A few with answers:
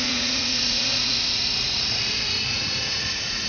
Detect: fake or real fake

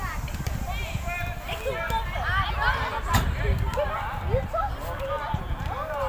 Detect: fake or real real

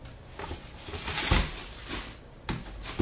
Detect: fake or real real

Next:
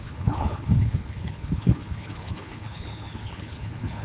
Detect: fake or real fake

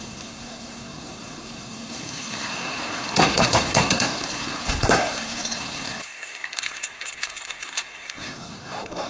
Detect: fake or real fake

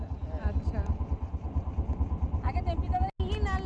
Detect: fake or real real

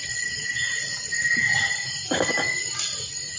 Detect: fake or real real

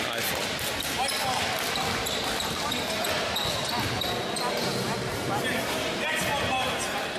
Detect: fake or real real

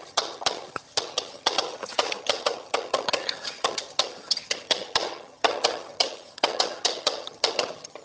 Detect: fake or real fake